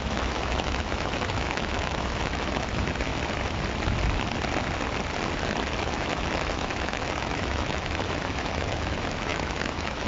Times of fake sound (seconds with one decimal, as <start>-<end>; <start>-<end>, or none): 0.0-3.1; 5.8-10.1